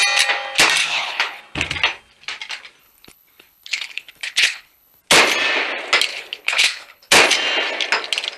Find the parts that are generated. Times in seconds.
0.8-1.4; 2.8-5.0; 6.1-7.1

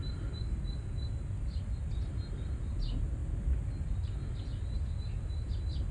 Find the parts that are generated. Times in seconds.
none

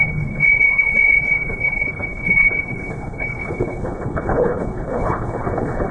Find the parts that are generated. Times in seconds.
0.0-5.9

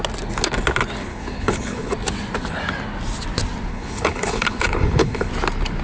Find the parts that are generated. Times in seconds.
1.1-1.9; 3.7-5.3

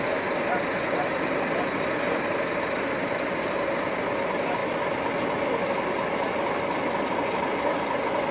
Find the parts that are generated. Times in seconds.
none

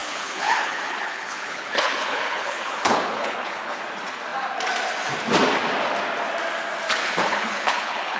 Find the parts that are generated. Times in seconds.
0.0-3.8; 7.0-8.2